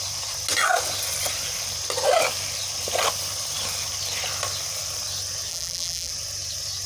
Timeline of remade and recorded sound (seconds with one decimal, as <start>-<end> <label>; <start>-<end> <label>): 0.0-5.5 recorded; 5.5-6.1 remade; 6.1-6.9 recorded